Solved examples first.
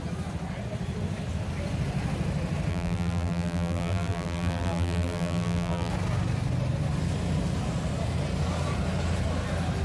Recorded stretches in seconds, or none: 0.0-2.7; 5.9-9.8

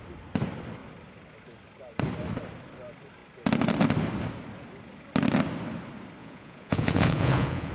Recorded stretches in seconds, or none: 0.0-6.2

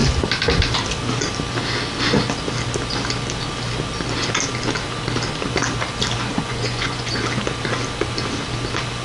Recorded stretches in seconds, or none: 0.0-6.3; 7.2-9.0

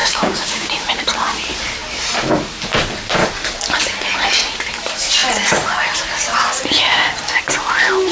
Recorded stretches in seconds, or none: 0.7-8.1

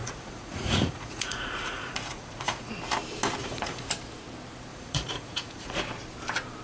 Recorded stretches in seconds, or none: 2.7-3.4; 3.9-4.7; 5.8-6.6